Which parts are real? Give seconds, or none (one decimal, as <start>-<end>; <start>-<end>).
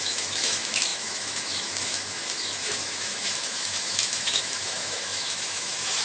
none